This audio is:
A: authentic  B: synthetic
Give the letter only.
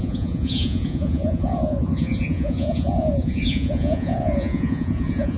B